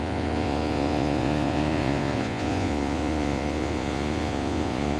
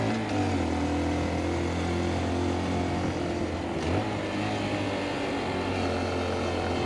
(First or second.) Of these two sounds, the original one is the second